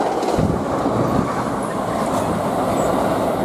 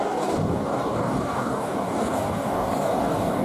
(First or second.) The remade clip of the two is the second